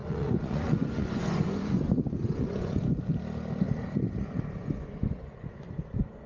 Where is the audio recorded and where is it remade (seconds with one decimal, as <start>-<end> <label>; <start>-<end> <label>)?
0.0-3.0 remade; 3.0-4.6 recorded; 4.6-6.3 remade